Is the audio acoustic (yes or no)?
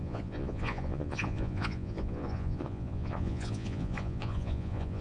no